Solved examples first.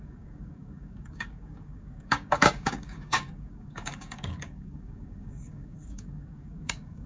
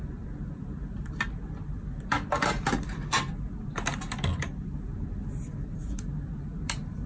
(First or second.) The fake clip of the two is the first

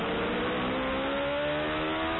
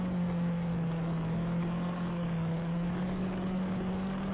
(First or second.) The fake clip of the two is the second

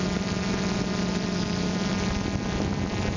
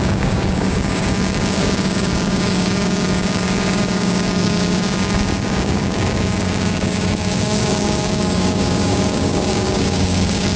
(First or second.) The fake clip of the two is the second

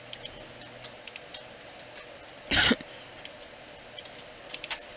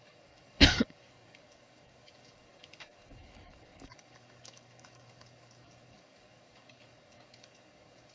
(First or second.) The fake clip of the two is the second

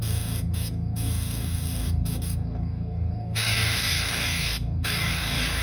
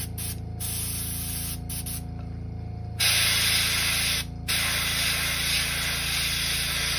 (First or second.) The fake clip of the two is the first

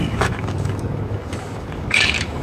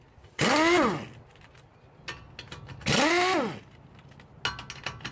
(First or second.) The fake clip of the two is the first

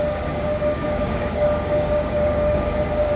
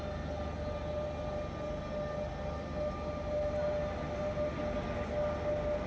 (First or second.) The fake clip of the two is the first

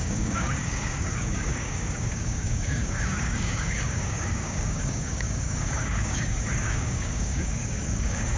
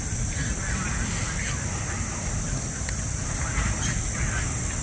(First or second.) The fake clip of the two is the first